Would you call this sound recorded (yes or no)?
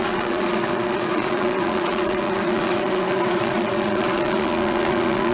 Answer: no